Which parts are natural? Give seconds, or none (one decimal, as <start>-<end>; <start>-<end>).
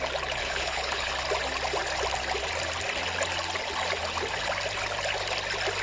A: 0.0-0.4; 1.1-5.8